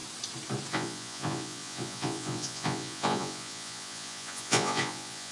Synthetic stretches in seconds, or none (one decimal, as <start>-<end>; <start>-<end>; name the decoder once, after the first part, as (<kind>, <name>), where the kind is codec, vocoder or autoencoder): 0.7-5.3 (vocoder, Vocos)